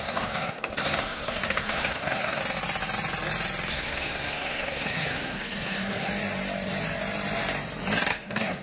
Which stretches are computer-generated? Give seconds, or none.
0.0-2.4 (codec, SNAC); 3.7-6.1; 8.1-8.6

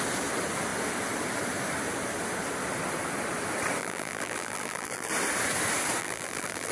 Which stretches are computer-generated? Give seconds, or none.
3.8-5.1 (vocoder, BigVGAN v2); 6.0-6.7